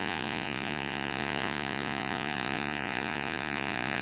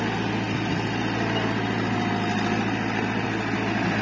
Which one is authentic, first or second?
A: second